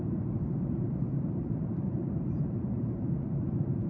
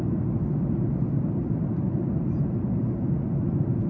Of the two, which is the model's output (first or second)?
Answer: first